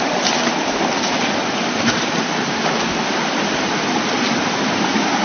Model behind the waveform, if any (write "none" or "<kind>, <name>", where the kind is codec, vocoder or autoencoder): none